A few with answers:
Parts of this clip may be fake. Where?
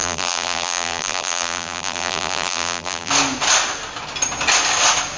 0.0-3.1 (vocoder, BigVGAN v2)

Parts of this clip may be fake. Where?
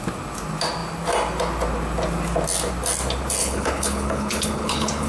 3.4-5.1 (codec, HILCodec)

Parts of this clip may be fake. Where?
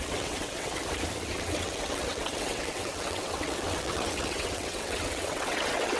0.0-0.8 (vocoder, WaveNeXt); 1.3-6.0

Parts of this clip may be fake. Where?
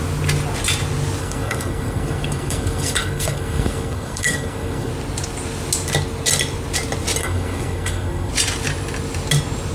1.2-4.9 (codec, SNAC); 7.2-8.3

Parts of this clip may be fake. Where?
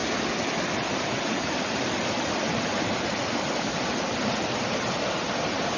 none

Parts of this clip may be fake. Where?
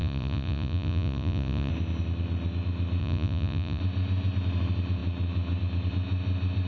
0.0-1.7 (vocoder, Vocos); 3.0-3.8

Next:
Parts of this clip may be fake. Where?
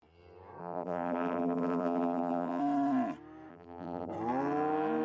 0.6-2.6 (vocoder, BigVGAN v2); 3.5-4.1